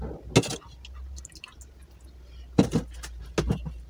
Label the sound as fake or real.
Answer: real